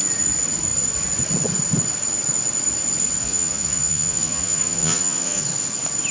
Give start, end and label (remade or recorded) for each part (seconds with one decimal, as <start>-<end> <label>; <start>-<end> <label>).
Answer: 0.0-3.2 recorded; 3.2-5.4 remade; 5.4-6.1 recorded